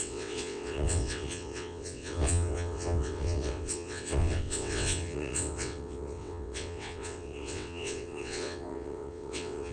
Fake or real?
fake